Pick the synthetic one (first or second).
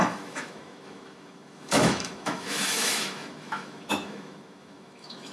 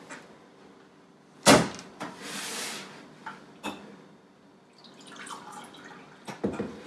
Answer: first